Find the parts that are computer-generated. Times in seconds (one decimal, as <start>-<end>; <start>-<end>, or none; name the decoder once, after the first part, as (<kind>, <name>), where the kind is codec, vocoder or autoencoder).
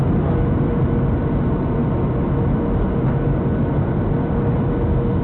none